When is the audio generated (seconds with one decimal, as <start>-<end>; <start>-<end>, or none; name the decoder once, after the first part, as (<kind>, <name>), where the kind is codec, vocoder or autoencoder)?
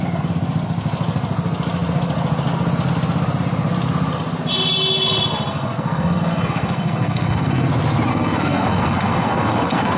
5.5-7.7 (codec, SNAC); 8.1-10.0